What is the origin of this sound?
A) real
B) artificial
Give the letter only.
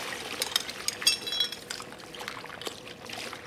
A